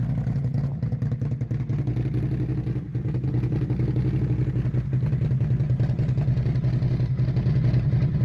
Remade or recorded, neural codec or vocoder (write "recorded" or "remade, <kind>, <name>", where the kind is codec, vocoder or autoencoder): recorded